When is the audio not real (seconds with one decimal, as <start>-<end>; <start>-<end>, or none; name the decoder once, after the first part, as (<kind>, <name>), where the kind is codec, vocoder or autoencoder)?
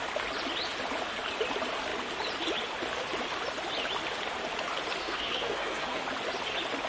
5.0-6.0 (codec, SNAC)